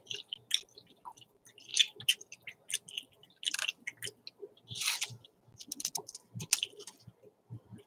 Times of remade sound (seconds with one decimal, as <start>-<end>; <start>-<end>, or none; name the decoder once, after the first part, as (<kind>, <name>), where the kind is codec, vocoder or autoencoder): none

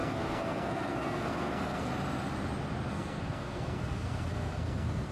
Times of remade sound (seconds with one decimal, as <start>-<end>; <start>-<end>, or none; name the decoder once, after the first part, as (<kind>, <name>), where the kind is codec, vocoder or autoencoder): 0.0-1.9 (codec, SNAC); 2.9-5.1

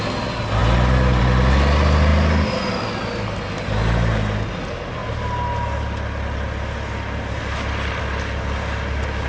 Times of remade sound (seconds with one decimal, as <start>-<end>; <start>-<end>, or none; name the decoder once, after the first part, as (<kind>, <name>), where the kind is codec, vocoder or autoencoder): none

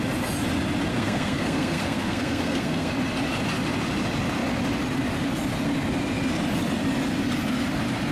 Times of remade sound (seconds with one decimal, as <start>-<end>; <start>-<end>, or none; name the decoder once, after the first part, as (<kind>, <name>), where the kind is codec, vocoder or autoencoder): 0.9-2.9 (codec, SNAC)

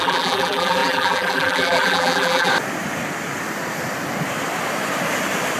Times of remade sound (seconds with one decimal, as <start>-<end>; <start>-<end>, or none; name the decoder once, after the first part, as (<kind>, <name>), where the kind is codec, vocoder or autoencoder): 0.0-2.5 (vocoder, BigVGAN v2)